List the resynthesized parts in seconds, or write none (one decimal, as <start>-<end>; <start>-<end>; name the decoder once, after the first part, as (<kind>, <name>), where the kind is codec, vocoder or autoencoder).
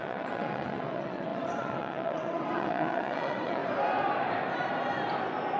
0.0-3.6 (vocoder, WaveNeXt)